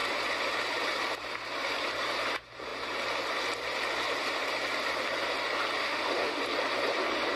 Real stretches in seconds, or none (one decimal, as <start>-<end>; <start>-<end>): 0.0-5.8; 6.4-7.4